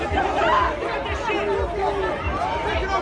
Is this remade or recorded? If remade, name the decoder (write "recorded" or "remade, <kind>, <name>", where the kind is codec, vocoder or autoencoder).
recorded